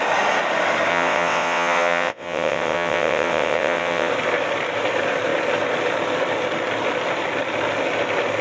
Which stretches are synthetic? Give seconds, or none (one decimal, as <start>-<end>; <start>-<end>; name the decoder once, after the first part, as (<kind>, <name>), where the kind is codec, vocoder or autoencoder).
0.9-4.1 (vocoder, WaveNeXt)